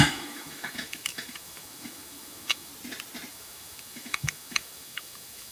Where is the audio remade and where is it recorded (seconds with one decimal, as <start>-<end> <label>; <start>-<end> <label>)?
0.0-2.7 remade; 2.7-3.3 recorded; 3.3-5.5 remade